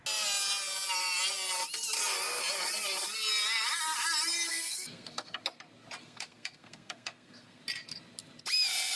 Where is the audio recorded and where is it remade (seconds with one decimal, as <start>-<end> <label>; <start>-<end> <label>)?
0.0-4.5 recorded; 4.5-5.4 remade; 5.4-6.0 recorded; 6.0-7.6 remade; 7.6-9.0 recorded